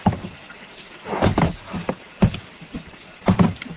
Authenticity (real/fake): fake